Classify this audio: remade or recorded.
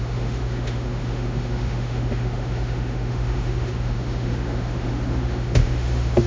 remade